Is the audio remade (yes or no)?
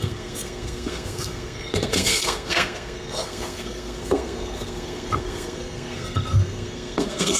yes